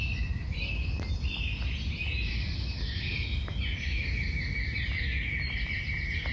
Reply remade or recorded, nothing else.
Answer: recorded